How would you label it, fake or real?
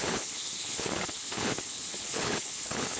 fake